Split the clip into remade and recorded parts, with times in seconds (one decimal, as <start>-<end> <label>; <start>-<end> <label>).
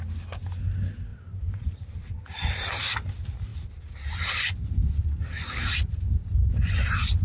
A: 0.0-1.1 recorded; 1.1-2.8 remade; 2.8-7.2 recorded